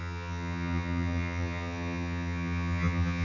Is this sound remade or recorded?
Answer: remade